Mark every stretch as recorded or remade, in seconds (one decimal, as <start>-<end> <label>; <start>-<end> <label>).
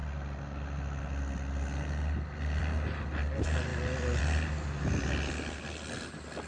0.0-6.5 recorded